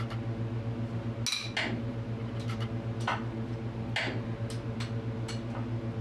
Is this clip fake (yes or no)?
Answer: no